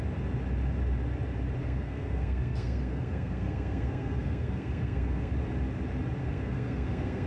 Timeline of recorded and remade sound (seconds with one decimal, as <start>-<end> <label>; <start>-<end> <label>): 0.0-1.6 recorded; 1.6-5.3 remade; 5.3-6.2 recorded; 6.2-7.3 remade